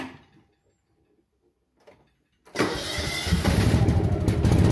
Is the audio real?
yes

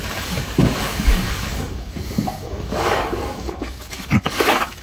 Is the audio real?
no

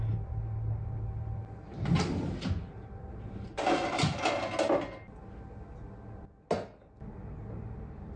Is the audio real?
yes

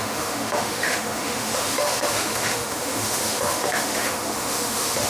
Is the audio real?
no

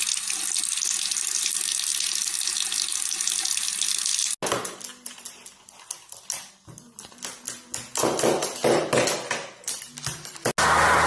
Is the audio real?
yes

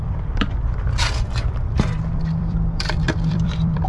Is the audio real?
no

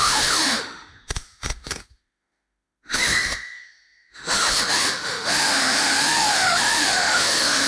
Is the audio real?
no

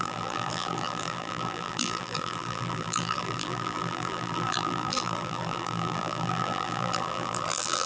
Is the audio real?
no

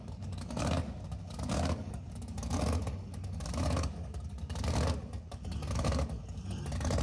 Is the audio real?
no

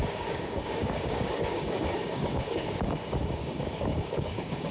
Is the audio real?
no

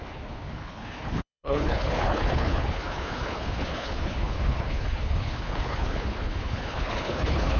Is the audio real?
no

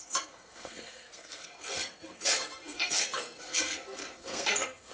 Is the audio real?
no